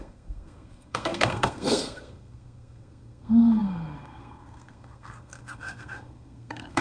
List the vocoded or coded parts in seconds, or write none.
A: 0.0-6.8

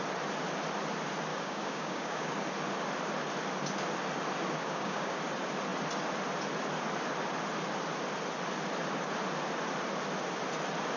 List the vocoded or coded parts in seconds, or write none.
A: 1.3-2.3; 4.6-5.2

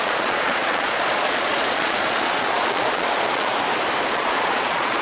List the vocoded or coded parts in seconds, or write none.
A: 0.0-3.5; 4.1-5.0

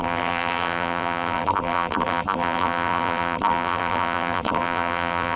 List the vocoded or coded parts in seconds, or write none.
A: 0.0-5.4

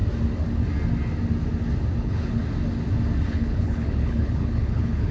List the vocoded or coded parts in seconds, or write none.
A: 2.0-2.4; 3.3-5.1